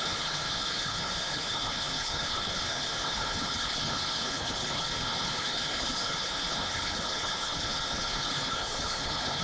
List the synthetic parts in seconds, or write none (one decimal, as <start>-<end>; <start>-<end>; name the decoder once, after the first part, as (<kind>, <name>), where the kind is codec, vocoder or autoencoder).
0.0-9.4 (codec, HILCodec)